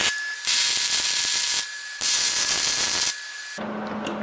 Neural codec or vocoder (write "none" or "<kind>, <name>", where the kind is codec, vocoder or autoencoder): none